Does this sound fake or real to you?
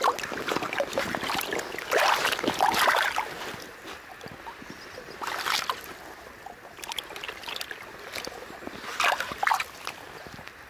real